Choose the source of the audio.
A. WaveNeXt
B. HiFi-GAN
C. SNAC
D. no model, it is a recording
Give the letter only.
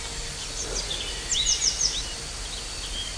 D